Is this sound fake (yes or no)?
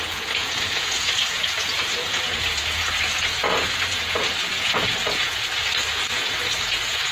yes